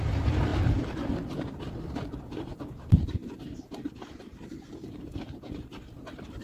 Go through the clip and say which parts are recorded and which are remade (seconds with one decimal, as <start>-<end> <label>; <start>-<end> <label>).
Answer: 0.0-3.2 remade; 3.2-3.8 recorded; 3.8-6.4 remade